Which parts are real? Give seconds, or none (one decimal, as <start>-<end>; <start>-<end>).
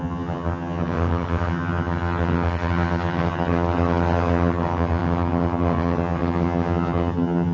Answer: none